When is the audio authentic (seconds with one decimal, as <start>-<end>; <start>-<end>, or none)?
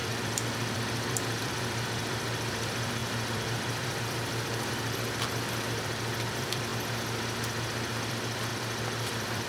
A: 6.7-7.9